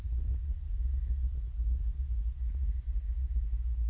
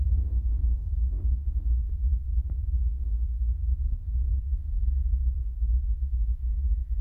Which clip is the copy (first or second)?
second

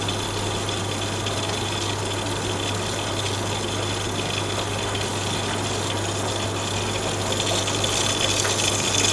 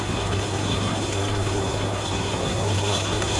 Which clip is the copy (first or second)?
second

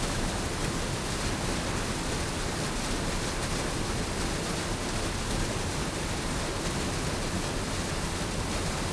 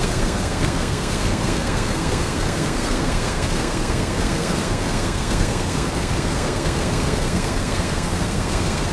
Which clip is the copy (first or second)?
second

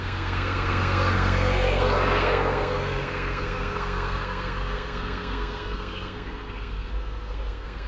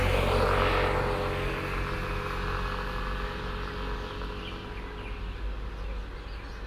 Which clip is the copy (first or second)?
first